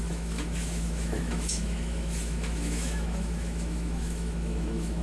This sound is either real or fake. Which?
fake